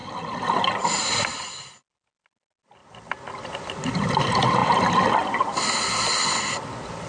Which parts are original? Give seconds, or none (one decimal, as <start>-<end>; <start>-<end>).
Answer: 0.0-7.1